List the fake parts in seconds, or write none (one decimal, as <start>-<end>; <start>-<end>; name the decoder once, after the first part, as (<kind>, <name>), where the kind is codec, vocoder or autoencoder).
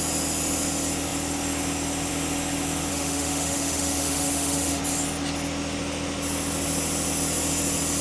2.9-4.8 (autoencoder, DAC-VAE)